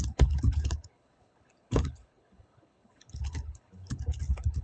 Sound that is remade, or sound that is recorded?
remade